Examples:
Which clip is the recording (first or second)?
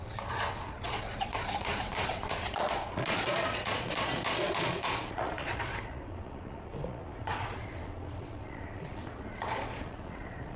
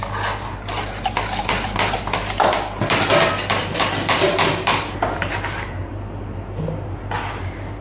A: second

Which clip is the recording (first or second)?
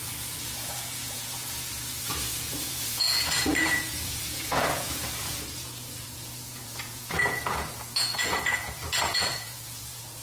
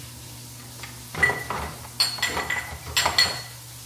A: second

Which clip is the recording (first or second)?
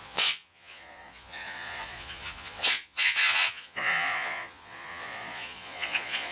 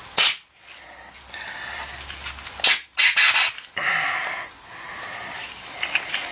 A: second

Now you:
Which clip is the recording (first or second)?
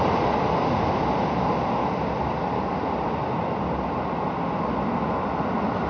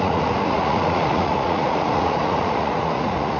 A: first